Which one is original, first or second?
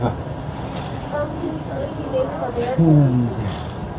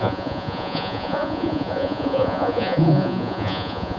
first